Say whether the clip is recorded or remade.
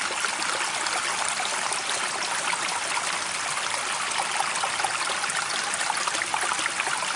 recorded